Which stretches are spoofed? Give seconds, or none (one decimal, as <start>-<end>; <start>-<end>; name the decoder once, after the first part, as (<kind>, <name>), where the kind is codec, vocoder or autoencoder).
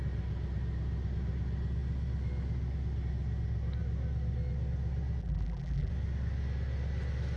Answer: 5.2-5.9 (vocoder, BigVGAN v2)